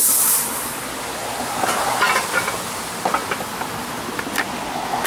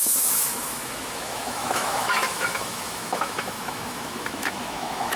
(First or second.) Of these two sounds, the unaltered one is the first